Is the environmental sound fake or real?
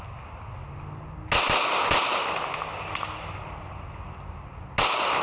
real